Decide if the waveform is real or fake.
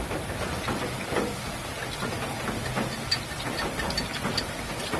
real